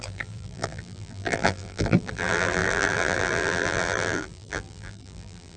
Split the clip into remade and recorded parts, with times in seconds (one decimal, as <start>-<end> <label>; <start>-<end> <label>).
0.0-5.6 remade

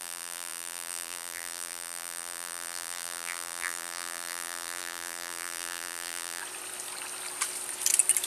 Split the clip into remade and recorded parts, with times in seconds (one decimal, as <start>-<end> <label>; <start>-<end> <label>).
0.0-6.4 remade; 6.4-8.3 recorded

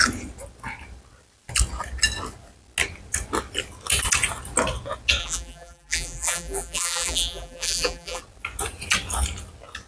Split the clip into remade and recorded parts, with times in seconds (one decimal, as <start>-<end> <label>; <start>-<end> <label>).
0.0-5.2 recorded; 5.2-8.2 remade; 8.2-9.9 recorded

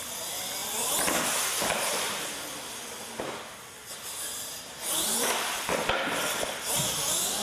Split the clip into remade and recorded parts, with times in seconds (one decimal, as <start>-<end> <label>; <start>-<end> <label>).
0.0-7.4 recorded

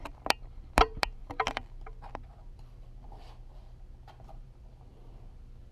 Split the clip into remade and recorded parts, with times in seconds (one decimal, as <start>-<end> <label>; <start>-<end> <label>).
0.0-1.2 remade; 1.2-2.1 recorded; 2.1-5.7 remade

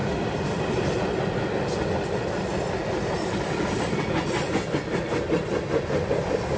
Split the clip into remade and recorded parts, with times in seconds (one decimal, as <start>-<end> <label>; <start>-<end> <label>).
0.0-6.6 recorded

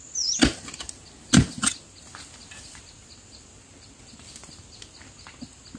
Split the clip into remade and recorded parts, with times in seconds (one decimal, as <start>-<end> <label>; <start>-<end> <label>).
0.0-5.8 recorded